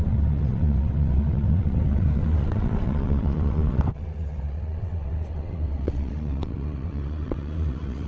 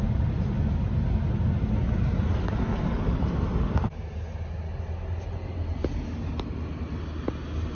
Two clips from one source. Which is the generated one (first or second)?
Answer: first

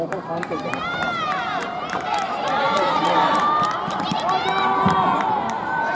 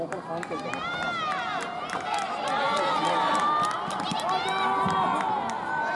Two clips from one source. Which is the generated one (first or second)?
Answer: first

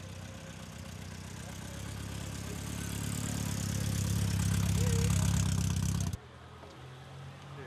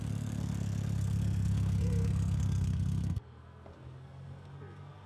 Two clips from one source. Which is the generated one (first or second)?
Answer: second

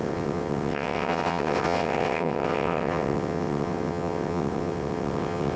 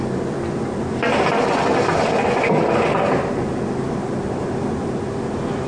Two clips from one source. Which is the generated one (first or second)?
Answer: first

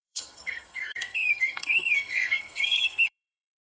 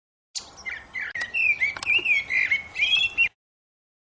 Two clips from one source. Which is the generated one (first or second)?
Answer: first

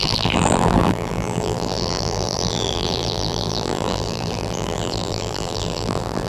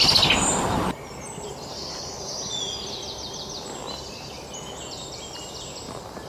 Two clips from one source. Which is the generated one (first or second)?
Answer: first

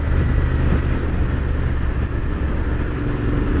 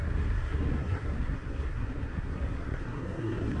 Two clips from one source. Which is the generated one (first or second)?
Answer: second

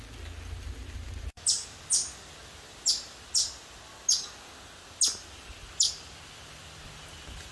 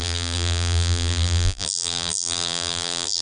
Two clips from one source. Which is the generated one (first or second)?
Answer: second